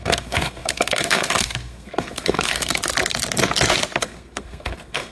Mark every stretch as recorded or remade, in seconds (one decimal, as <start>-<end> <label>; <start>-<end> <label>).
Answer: 0.0-2.8 remade; 2.8-4.0 recorded; 4.0-5.1 remade